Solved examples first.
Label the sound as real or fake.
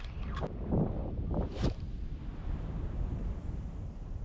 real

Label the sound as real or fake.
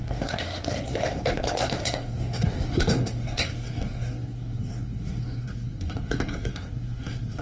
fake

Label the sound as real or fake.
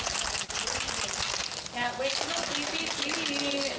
real